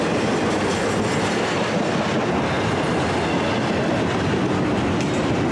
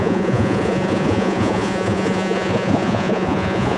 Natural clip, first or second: first